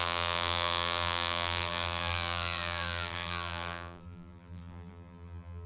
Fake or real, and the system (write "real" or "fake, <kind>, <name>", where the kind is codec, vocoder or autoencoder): fake, vocoder, BigVGAN v2